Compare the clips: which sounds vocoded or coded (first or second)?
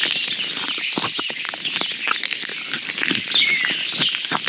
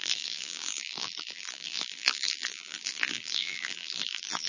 second